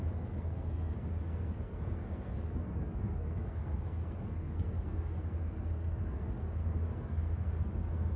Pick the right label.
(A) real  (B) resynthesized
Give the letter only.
B